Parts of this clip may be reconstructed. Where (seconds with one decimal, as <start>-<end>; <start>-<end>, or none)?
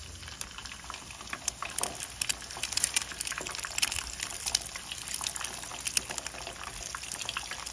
0.6-4.8